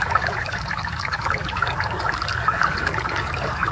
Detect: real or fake fake